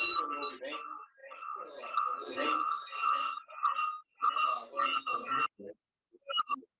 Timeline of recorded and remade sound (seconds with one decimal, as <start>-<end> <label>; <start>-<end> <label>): 0.0-6.8 recorded